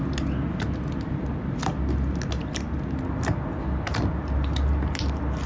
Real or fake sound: real